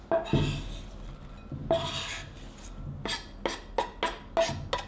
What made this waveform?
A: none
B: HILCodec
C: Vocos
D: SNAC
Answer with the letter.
A